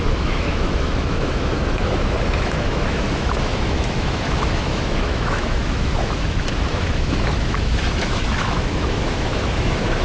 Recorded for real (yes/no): no